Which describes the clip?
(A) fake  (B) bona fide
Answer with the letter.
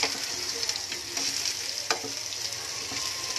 B